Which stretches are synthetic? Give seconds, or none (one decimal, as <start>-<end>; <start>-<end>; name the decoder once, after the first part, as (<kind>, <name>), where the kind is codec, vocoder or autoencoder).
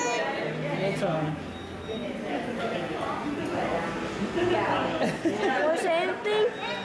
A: none